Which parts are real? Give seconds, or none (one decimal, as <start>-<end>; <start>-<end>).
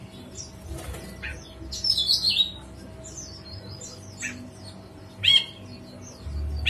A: 0.0-6.7